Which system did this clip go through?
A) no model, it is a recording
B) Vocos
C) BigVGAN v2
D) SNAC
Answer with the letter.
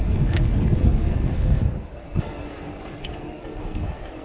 D